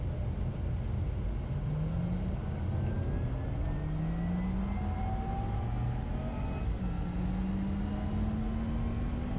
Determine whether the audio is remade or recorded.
recorded